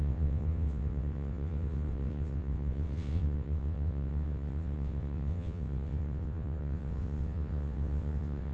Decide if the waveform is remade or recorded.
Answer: remade